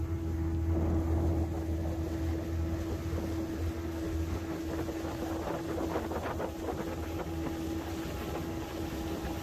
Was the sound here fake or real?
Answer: real